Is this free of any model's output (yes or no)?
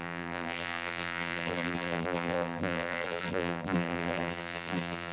no